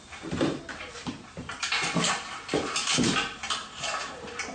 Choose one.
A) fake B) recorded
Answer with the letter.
B